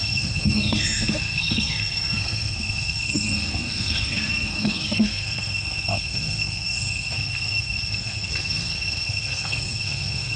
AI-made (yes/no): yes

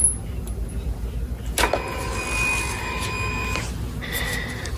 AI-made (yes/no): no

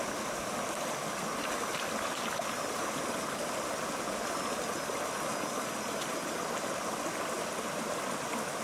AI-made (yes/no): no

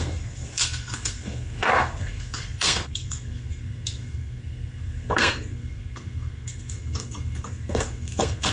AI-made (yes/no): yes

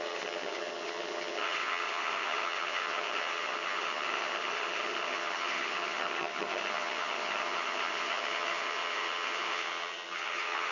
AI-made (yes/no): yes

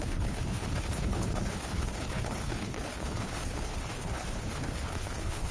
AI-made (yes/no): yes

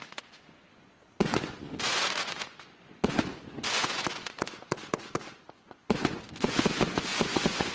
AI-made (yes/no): yes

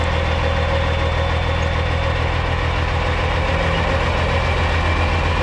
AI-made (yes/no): no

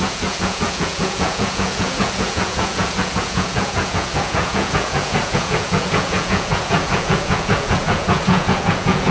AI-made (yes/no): yes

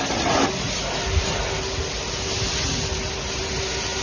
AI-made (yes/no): no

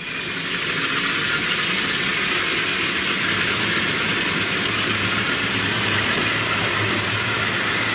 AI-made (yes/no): no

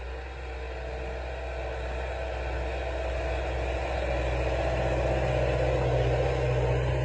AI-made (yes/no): no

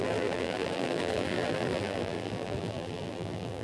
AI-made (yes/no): yes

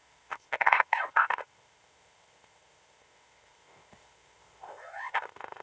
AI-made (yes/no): yes